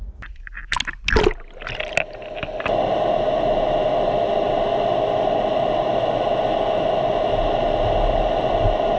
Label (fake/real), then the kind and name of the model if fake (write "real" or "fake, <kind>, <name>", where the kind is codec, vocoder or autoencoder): real